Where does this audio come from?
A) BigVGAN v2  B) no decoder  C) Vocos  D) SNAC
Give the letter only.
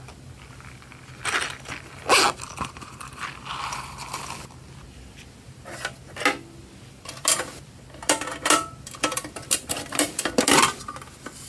B